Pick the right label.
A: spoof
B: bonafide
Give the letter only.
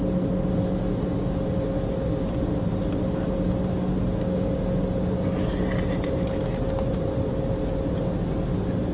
B